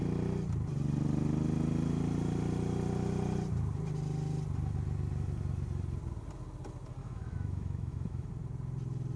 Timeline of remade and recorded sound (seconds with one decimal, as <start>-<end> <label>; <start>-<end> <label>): 0.0-7.0 recorded; 7.0-8.3 remade; 8.3-9.2 recorded